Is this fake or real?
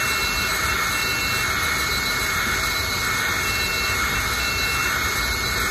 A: real